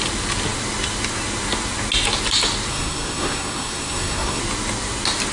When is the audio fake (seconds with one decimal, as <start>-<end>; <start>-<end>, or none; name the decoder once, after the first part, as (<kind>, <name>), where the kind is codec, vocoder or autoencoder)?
2.7-4.4 (codec, SNAC)